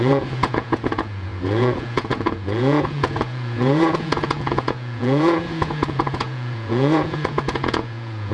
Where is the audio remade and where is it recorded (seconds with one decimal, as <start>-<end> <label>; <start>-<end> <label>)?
0.0-8.3 remade

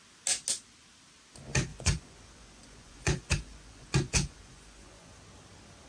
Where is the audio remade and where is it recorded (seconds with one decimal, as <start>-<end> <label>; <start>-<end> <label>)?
0.0-1.7 recorded; 1.7-5.2 remade; 5.2-5.9 recorded

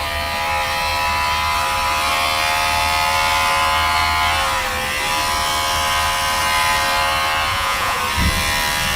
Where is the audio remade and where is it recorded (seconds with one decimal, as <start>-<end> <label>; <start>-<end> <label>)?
0.0-7.5 recorded; 7.5-8.0 remade; 8.0-9.0 recorded

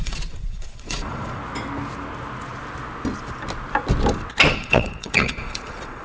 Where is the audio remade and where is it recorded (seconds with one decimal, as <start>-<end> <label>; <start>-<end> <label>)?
0.0-1.4 remade; 1.4-4.5 recorded; 4.5-6.0 remade

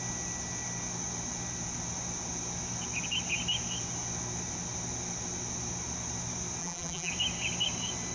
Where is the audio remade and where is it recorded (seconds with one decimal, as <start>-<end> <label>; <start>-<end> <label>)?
0.0-6.6 recorded; 6.6-7.1 remade; 7.1-8.1 recorded

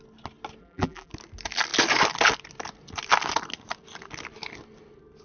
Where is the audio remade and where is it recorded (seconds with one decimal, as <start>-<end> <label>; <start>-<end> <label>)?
0.0-0.6 recorded; 0.6-1.1 remade; 1.1-5.2 recorded